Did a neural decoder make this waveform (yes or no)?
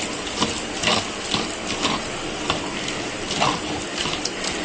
no